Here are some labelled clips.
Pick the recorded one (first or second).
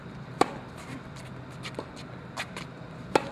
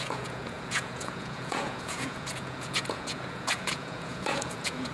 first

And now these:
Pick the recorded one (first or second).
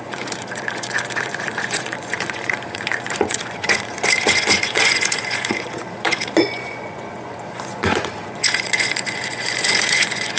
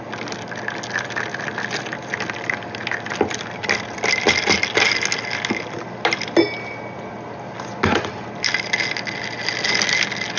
second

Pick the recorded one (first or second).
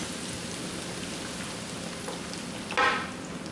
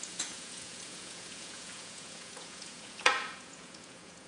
first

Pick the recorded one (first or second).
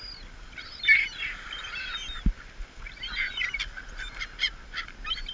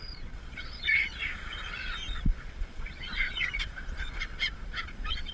first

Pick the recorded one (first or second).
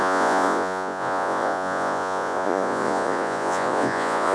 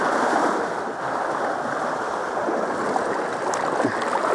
second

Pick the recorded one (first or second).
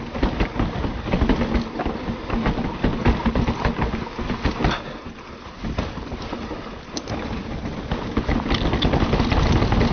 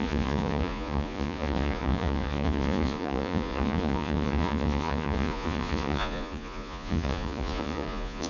first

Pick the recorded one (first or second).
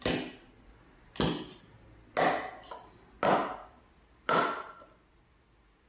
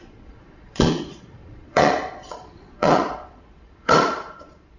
first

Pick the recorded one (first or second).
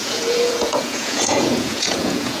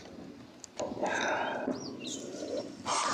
second